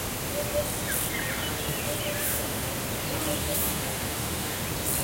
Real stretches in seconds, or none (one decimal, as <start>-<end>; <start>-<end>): 0.0-2.2; 2.7-3.4; 4.6-5.0